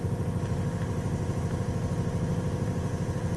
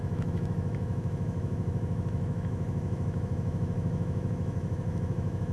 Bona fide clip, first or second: first